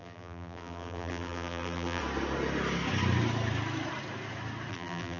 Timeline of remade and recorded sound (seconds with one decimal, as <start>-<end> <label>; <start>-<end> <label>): 0.0-2.0 remade; 2.0-4.7 recorded; 4.7-5.2 remade